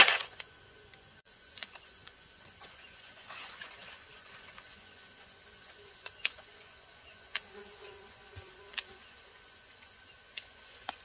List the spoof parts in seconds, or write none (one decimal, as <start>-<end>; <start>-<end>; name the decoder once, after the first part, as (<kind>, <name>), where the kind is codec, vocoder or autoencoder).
0.0-11.0 (vocoder, Vocos)